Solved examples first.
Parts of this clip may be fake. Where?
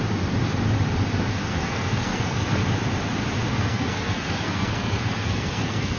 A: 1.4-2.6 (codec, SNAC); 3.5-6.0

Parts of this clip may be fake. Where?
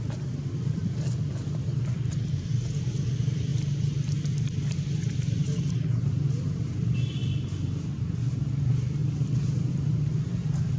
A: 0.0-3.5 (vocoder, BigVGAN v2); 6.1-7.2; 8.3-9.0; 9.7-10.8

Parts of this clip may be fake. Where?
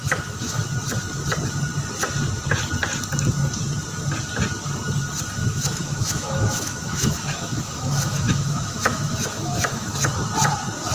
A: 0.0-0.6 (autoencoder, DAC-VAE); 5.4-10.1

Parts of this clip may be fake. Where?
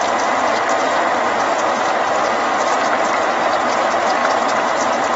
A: 4.2-4.8 (vocoder, BigVGAN v2)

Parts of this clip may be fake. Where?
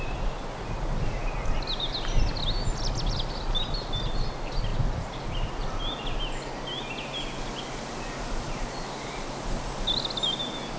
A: none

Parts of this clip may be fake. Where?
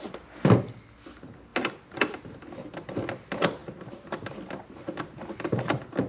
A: none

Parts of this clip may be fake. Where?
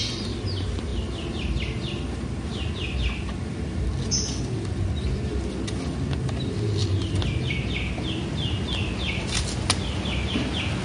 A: none